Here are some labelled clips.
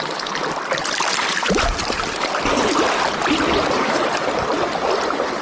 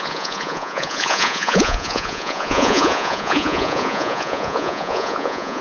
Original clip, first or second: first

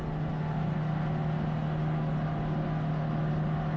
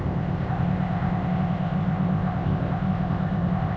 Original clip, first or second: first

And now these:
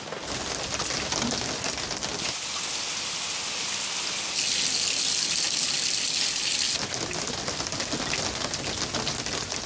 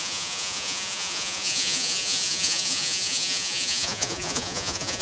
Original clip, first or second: first